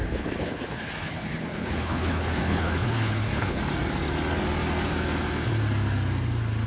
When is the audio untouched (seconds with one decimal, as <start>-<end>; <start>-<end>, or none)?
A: 3.6-6.7